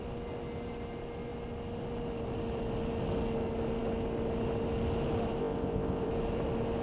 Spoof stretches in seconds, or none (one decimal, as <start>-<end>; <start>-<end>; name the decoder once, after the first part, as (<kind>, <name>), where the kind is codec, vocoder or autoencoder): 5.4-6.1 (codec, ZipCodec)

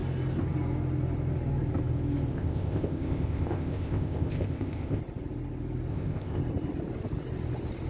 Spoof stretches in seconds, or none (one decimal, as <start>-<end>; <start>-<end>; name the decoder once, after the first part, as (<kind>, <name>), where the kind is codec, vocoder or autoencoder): 2.3-5.0 (codec, ZipCodec); 5.9-6.4

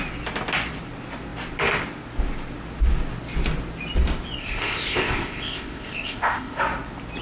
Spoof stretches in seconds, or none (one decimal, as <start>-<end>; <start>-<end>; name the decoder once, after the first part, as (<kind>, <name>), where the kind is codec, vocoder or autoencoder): 4.4-6.6 (codec, ZipCodec)

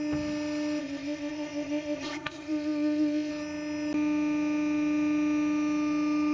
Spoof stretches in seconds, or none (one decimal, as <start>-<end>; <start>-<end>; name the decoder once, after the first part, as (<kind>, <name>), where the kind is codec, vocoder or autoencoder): 0.8-3.3 (codec, ZipCodec)